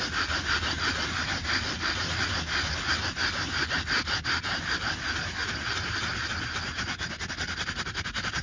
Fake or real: real